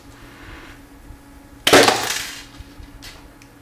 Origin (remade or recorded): recorded